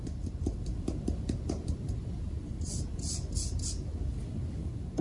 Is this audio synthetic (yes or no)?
yes